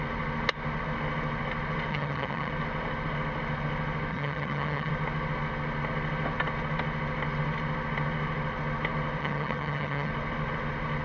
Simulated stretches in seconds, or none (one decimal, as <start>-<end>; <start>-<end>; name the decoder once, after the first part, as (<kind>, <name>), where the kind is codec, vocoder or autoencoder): 1.9-2.5 (vocoder, HiFi-GAN); 4.1-4.9; 9.2-10.1